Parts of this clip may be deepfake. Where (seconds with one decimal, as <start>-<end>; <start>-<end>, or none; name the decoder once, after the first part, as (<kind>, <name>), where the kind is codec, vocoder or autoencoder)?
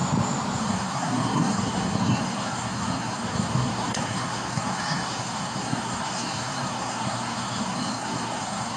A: 0.6-8.8 (codec, SNAC)